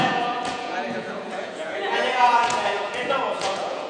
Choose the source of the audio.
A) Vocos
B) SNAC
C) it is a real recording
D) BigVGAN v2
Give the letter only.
A